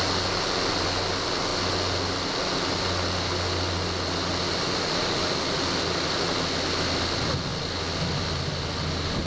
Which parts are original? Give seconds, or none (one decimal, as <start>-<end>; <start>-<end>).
0.0-9.3